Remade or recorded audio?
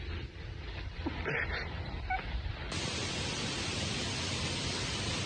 recorded